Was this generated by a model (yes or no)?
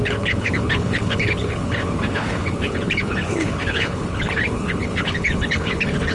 yes